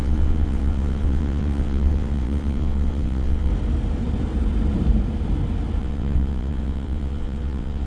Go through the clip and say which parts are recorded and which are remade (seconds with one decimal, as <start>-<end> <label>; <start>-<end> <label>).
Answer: 0.0-3.5 remade; 3.5-5.8 recorded; 5.8-7.9 remade